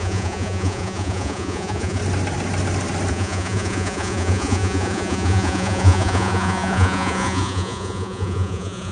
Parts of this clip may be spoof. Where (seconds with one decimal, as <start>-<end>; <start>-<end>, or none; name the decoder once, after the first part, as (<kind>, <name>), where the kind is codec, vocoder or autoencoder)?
0.0-2.0 (vocoder, Vocos); 3.1-8.9